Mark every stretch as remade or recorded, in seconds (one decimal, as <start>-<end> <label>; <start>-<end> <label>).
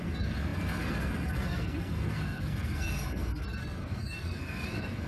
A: 0.0-5.1 remade